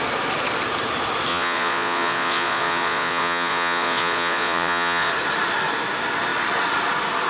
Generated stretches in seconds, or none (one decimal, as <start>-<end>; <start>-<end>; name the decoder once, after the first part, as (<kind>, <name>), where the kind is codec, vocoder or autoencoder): 1.3-5.1 (vocoder, Vocos)

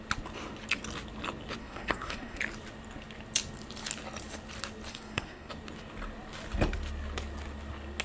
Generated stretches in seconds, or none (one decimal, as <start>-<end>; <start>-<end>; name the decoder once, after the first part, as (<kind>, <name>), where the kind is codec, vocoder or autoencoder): 1.6-2.4 (codec, SNAC); 4.9-5.5

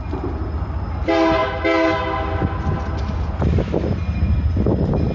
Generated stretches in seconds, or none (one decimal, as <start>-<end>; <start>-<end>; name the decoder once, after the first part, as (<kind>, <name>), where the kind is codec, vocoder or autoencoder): none

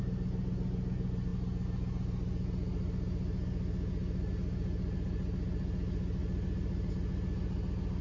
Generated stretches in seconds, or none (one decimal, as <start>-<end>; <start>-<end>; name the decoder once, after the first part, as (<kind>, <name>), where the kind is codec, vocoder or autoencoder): none

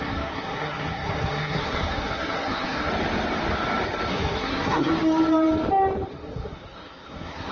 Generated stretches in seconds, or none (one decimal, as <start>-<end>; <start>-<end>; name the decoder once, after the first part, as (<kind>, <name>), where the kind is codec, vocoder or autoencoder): 0.0-2.9 (codec, SNAC); 4.1-4.9; 6.1-7.5